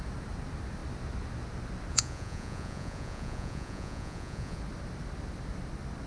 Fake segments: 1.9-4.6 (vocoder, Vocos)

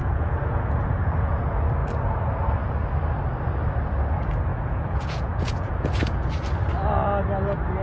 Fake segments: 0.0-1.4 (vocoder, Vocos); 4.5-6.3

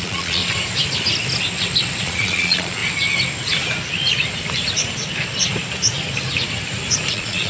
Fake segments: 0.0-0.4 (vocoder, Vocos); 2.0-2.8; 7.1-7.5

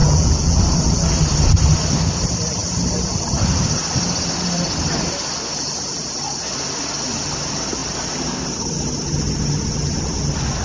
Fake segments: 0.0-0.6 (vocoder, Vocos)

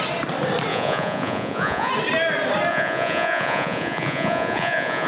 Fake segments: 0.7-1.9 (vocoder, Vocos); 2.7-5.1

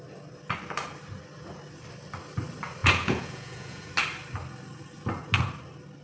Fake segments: 2.8-3.9 (vocoder, Vocos)

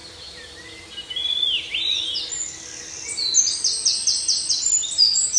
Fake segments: none

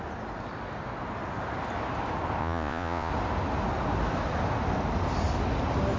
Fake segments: 2.4-3.1 (vocoder, Vocos)